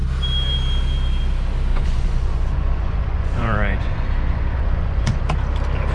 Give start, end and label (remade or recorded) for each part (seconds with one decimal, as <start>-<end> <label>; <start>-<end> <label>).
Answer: 0.0-1.7 recorded; 1.7-5.2 remade; 5.2-5.9 recorded